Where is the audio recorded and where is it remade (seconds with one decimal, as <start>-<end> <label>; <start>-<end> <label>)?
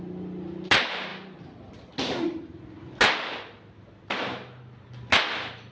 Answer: 0.0-5.7 recorded